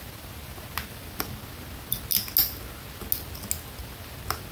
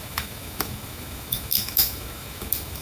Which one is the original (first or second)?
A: first